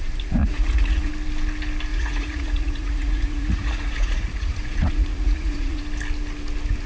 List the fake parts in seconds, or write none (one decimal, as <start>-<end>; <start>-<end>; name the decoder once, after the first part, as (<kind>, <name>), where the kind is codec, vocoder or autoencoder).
0.4-1.1 (vocoder, Vocos); 1.9-5.8